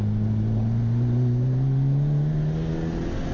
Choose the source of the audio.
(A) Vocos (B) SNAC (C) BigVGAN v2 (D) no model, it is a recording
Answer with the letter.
D